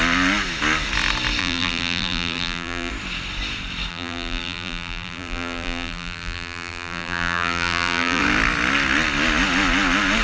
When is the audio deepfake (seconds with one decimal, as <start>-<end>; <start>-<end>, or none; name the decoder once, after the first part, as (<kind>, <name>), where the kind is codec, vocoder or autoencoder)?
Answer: 1.4-2.9 (vocoder, BigVGAN v2); 3.9-8.2